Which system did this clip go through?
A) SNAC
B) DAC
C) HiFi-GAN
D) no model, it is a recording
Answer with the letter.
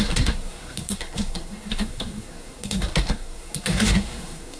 A